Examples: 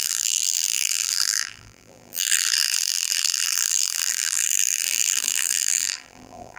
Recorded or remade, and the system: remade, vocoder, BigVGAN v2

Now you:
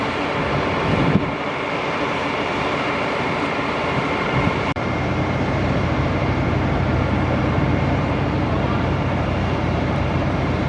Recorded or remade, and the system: remade, vocoder, BigVGAN v2